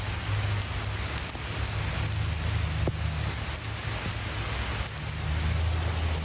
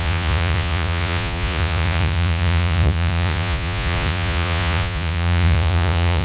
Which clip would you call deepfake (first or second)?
second